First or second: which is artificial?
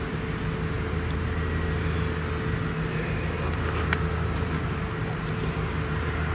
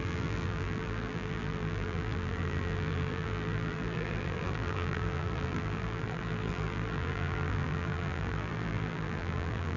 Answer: second